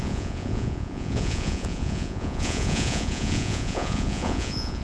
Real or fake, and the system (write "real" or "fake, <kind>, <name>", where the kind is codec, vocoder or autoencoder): fake, vocoder, Vocos